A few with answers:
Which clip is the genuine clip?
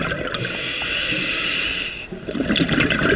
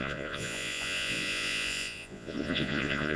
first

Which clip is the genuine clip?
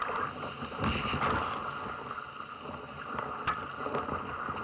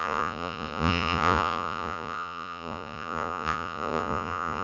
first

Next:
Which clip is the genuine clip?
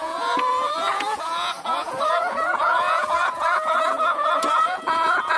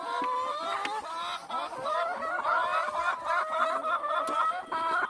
second